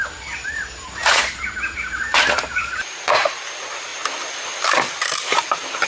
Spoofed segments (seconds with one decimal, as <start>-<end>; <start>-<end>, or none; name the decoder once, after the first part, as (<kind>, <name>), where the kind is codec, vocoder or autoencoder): 0.0-1.0 (vocoder, BigVGAN v2); 2.4-3.9; 4.7-5.9